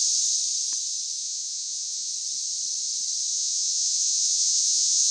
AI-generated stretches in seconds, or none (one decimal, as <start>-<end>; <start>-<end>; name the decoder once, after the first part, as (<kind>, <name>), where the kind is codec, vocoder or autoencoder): 1.2-2.1 (vocoder, Vocos); 3.3-5.1